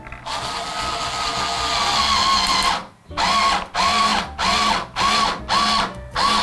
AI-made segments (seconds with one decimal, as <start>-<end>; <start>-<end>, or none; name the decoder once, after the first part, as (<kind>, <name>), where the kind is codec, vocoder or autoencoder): none